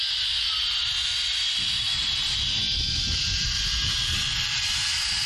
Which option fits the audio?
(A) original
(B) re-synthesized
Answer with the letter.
A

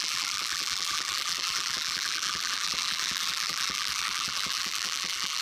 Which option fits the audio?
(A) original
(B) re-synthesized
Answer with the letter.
B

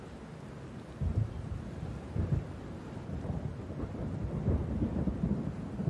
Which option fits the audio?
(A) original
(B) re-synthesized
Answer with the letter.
A